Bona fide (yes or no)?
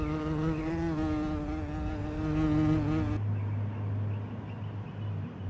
yes